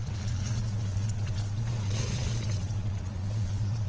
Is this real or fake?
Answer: fake